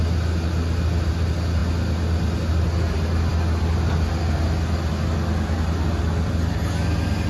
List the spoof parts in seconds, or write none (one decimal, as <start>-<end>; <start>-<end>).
none